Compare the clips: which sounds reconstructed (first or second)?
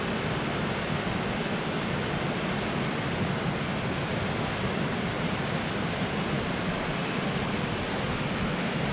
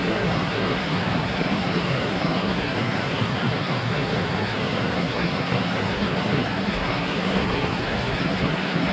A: second